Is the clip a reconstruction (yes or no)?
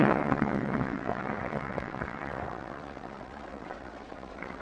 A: yes